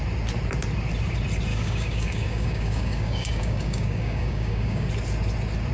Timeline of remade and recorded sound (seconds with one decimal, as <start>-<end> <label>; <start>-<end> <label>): 0.0-1.5 recorded; 1.5-4.9 remade; 4.9-5.7 recorded